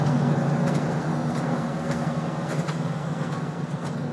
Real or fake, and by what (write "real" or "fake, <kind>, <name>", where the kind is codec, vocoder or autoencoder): fake, codec, SNAC